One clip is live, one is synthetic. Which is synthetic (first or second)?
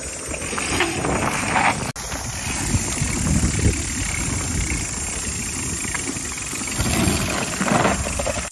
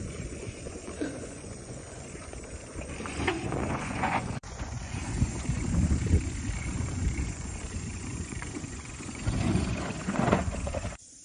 second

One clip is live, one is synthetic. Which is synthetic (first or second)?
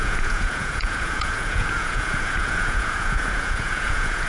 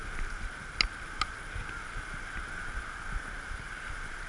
first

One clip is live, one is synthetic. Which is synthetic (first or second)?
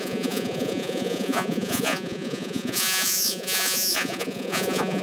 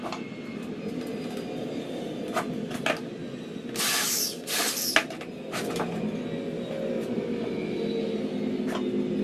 first